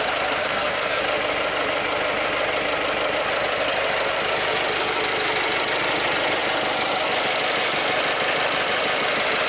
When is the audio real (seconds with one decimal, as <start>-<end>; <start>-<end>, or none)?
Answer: 0.0-0.4; 1.0-9.5